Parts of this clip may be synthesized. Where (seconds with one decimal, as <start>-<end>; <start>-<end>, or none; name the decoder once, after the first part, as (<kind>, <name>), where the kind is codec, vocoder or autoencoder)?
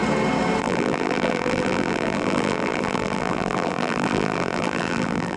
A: 0.6-5.4 (vocoder, BigVGAN v2)